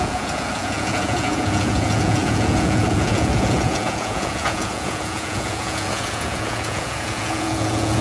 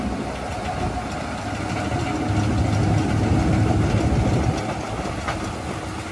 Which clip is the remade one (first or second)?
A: first